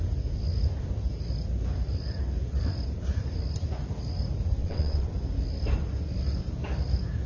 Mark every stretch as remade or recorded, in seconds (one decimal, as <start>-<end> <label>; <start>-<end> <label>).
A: 0.0-4.6 recorded; 4.6-5.1 remade; 5.1-7.3 recorded

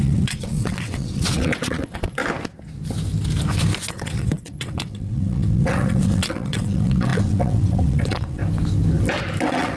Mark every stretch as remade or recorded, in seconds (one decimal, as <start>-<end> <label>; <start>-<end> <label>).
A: 0.0-2.2 remade; 2.2-3.9 recorded; 3.9-8.4 remade; 8.4-9.4 recorded; 9.4-9.8 remade

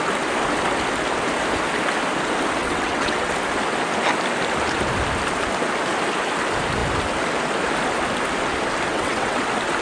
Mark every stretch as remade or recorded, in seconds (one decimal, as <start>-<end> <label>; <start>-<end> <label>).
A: 0.0-2.6 recorded; 2.6-3.3 remade; 3.3-8.9 recorded; 8.9-9.4 remade; 9.4-9.8 recorded

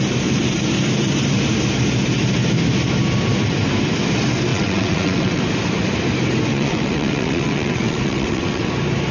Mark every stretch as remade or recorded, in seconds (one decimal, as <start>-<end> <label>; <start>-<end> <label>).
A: 0.0-4.5 recorded; 4.5-5.4 remade; 5.4-6.5 recorded; 6.5-8.7 remade; 8.7-9.1 recorded

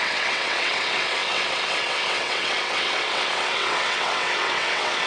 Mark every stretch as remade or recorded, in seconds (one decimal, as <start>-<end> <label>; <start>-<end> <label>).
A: 0.0-5.1 remade